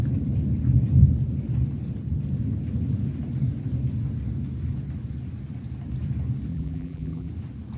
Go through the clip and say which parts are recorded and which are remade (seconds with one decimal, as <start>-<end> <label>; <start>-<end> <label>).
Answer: 0.0-6.5 recorded; 6.5-7.3 remade; 7.3-7.8 recorded